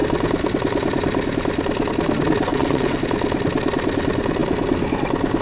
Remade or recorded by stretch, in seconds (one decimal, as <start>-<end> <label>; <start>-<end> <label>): 0.0-2.5 recorded; 2.5-3.0 remade; 3.0-5.4 recorded